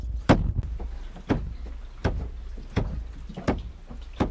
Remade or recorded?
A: recorded